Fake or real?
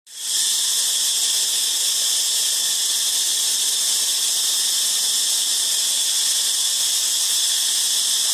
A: real